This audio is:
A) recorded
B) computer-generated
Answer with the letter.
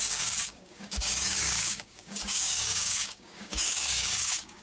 B